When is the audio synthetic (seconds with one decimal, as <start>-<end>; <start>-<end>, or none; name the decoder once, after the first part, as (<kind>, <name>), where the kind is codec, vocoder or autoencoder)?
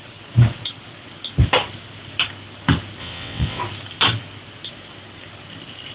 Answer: 3.0-3.6 (vocoder, WaveNeXt)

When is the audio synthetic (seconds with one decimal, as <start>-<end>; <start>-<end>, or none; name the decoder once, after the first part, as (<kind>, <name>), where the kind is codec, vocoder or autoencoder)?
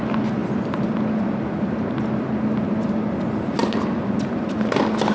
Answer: none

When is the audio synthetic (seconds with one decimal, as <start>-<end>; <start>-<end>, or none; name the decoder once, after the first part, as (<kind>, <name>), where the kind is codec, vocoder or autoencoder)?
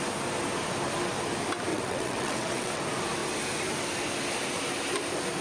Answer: 1.7-2.8 (vocoder, WaveNeXt)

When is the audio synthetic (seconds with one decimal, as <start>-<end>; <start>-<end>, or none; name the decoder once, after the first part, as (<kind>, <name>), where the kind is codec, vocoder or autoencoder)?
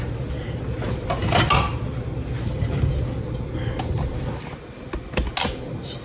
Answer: none